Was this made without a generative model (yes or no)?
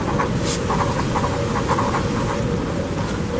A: yes